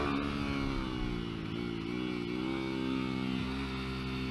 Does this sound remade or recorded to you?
recorded